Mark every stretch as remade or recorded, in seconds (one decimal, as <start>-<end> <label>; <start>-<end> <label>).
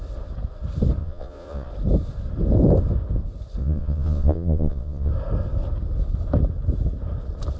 0.0-1.0 recorded; 1.0-1.7 remade; 1.7-3.6 recorded; 3.6-5.1 remade; 5.1-7.6 recorded